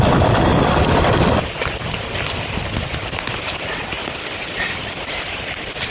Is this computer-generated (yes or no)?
no